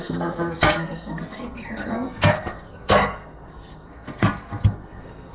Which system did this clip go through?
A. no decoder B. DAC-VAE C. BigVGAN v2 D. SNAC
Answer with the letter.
D